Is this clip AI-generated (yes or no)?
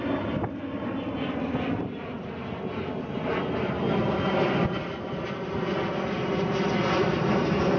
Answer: no